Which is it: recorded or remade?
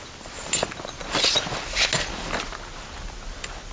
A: recorded